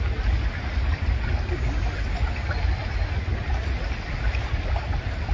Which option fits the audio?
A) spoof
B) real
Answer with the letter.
B